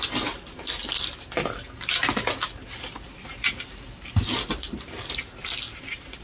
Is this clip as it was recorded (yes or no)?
yes